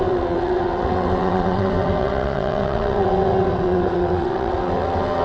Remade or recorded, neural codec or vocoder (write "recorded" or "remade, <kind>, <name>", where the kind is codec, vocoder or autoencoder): remade, vocoder, WaveNeXt